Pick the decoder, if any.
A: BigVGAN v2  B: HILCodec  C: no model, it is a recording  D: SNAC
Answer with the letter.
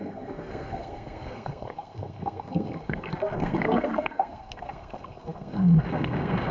D